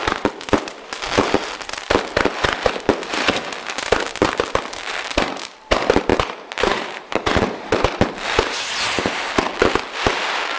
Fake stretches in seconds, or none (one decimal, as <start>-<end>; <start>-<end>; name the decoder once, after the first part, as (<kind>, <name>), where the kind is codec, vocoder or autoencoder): 6.1-7.8 (vocoder, BigVGAN v2)